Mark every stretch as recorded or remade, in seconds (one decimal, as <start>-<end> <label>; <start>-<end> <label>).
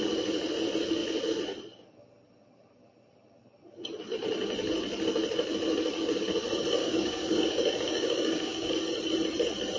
0.0-6.8 recorded; 6.8-8.7 remade; 8.7-9.8 recorded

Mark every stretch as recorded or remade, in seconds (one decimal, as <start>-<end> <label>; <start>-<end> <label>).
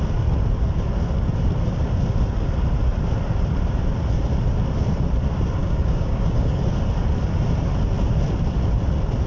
0.0-5.6 recorded; 5.6-6.6 remade; 6.6-9.3 recorded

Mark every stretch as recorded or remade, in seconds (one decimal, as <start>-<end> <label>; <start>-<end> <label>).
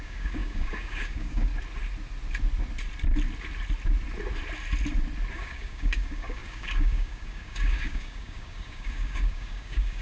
0.0-1.5 remade; 1.5-5.3 recorded; 5.3-10.0 remade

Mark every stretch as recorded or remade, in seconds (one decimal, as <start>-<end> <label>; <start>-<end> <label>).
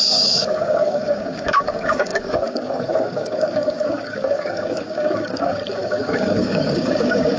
0.0-7.4 remade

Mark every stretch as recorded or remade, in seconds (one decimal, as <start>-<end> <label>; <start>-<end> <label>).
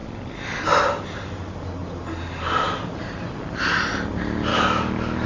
0.0-4.5 recorded; 4.5-5.3 remade